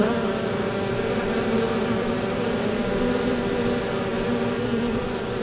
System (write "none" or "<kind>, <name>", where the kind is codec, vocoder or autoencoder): none